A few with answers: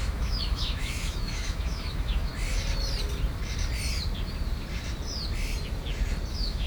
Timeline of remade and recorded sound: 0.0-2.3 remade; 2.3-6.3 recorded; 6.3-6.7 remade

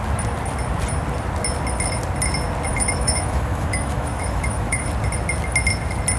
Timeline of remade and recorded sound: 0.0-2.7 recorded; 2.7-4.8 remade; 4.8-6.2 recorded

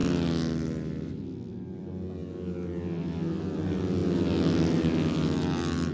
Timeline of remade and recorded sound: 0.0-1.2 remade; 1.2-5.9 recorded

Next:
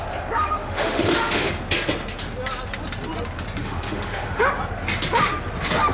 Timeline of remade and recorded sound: 0.0-0.4 recorded; 0.4-1.5 remade; 1.5-3.6 recorded; 3.6-4.4 remade; 4.4-5.9 recorded

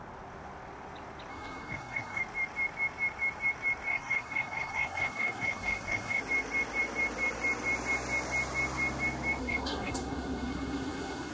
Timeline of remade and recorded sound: 0.0-1.3 recorded; 1.3-2.2 remade; 2.2-3.9 recorded; 3.9-6.2 remade; 6.2-9.4 recorded; 9.4-11.3 remade

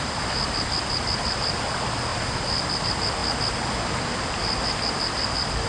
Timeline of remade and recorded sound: 0.0-3.2 remade; 3.2-4.1 recorded; 4.1-5.7 remade

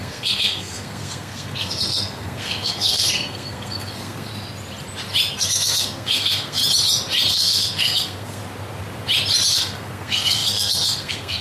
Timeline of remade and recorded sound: 0.0-4.3 remade; 4.3-5.4 recorded; 5.4-6.6 remade; 6.6-7.3 recorded; 7.3-8.4 remade; 8.4-9.5 recorded; 9.5-11.4 remade